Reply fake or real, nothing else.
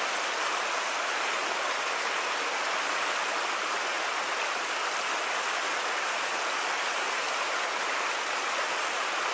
real